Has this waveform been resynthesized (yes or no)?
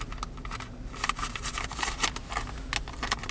no